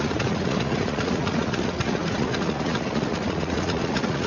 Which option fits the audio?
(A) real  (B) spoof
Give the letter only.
B